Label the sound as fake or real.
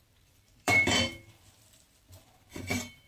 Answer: fake